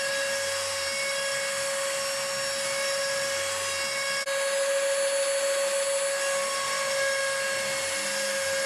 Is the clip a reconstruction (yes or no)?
no